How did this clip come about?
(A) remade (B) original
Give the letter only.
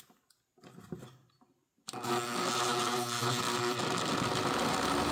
B